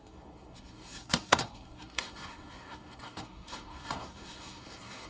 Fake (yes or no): yes